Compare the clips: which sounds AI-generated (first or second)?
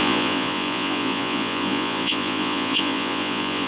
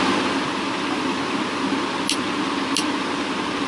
first